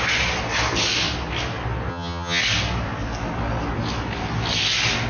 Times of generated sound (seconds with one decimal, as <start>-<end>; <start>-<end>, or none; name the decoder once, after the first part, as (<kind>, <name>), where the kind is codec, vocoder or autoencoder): 1.9-2.4 (vocoder, HiFi-GAN)